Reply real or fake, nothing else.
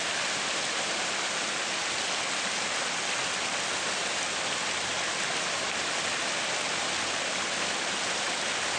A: real